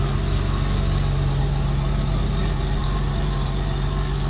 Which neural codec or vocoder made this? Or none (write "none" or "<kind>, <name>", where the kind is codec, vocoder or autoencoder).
none